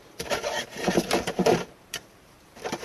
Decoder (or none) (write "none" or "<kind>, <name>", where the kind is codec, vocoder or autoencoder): vocoder, BigVGAN v2